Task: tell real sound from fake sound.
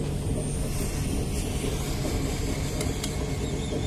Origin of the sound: real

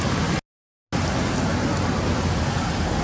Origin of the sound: real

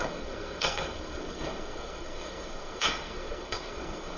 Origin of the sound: fake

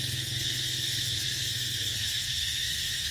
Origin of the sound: fake